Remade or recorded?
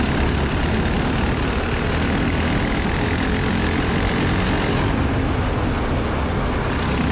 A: recorded